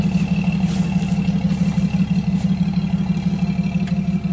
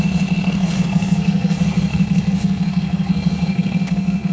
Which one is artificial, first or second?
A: second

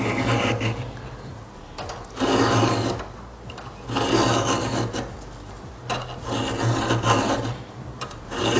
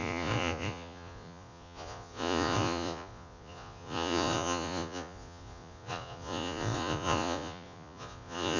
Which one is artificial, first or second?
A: second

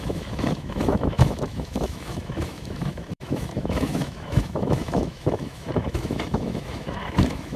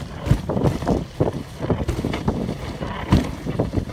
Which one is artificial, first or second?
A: first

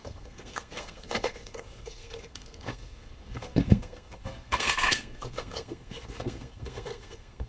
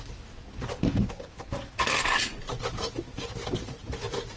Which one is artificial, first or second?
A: first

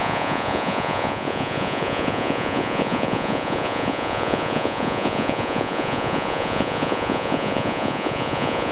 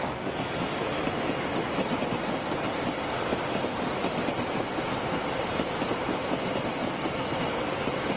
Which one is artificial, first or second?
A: first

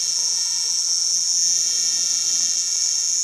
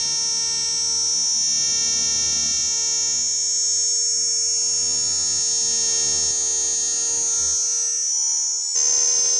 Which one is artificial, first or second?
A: first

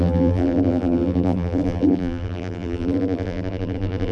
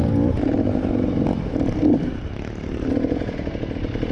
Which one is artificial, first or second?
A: first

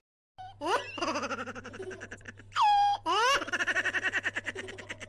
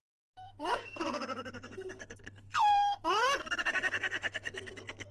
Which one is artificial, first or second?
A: second